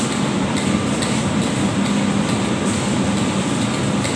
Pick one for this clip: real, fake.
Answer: real